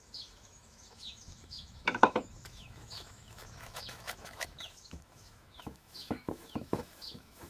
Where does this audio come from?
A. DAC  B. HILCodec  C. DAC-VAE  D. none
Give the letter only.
C